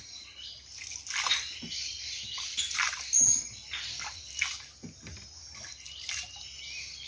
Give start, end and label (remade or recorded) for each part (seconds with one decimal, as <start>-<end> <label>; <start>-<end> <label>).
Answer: 0.0-7.1 recorded